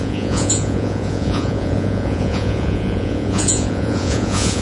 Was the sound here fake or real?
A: fake